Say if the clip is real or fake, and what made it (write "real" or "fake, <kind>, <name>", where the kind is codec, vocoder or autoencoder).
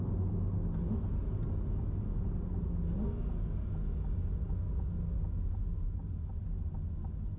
real